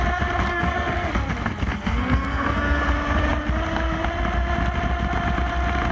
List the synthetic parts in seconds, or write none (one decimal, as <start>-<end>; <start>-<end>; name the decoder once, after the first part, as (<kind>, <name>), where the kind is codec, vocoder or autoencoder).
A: 0.5-1.1 (codec, SNAC); 1.7-2.8